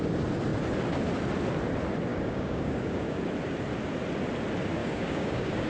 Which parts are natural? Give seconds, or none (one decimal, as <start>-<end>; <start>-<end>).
0.0-2.1; 3.2-4.8